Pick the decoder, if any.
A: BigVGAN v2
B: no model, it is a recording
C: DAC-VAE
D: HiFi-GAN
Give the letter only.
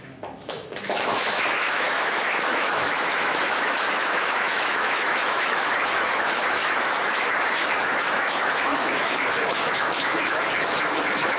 C